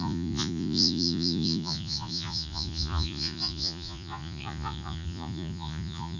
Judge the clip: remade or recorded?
remade